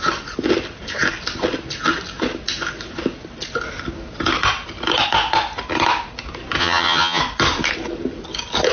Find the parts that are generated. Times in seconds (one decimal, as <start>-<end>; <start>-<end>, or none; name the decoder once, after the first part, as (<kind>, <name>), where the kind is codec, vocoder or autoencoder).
6.6-7.2 (vocoder, HiFi-GAN)